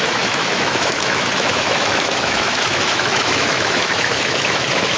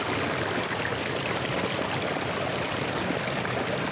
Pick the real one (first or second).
second